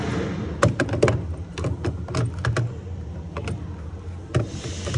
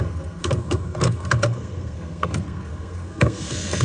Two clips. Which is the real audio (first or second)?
first